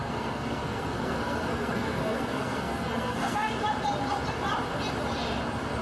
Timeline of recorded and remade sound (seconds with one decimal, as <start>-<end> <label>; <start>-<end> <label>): 0.0-3.5 remade; 3.5-5.8 recorded